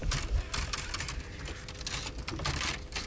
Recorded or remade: recorded